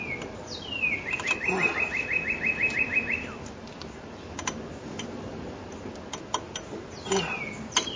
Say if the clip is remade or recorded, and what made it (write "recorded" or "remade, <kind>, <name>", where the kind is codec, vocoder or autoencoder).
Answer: recorded